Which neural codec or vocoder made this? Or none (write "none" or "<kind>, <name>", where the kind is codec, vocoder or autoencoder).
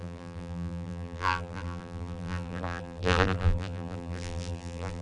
vocoder, BigVGAN v2